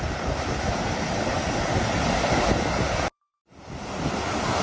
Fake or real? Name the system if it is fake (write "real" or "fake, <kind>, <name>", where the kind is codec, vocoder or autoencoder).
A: real